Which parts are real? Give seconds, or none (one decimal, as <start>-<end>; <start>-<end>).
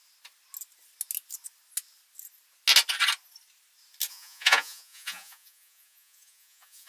0.0-4.1